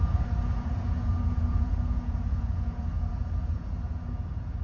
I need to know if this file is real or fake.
fake